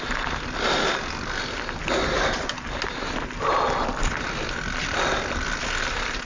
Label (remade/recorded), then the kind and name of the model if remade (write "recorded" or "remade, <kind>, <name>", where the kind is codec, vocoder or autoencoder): recorded